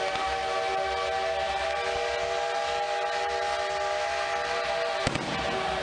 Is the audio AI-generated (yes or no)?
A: no